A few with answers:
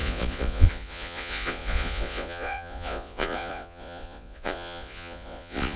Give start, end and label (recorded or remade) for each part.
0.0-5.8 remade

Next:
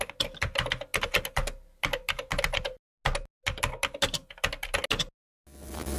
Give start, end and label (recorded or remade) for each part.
0.0-6.0 recorded

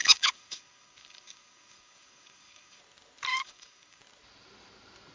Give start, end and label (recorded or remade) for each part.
0.0-2.8 remade; 2.8-3.3 recorded; 3.3-4.0 remade; 4.0-5.1 recorded

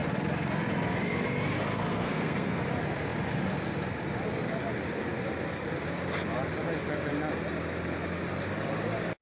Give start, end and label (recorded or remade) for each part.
0.0-1.9 recorded; 1.9-2.6 remade; 2.6-9.2 recorded

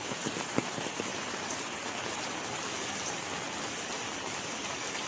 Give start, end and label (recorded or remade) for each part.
0.0-5.1 recorded

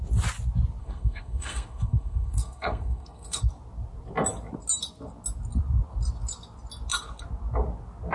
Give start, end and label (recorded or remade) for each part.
0.0-0.8 recorded; 0.8-3.4 remade; 3.4-8.1 recorded

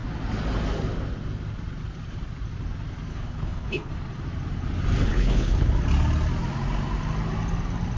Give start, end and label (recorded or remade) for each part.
0.0-3.1 recorded; 3.1-3.9 remade; 3.9-5.1 recorded; 5.1-5.7 remade; 5.7-8.0 recorded

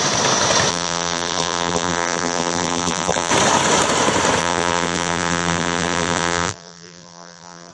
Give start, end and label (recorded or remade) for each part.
0.0-0.7 recorded; 0.7-3.3 remade; 3.3-4.4 recorded; 4.4-7.7 remade